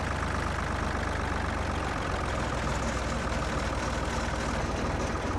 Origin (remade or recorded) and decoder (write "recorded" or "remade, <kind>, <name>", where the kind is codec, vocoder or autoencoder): recorded